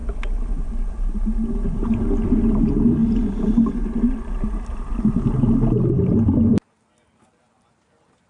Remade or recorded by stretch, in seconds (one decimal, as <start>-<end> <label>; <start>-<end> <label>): 0.0-8.3 recorded